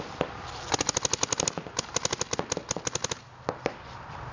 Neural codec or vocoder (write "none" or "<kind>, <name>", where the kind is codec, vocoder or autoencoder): none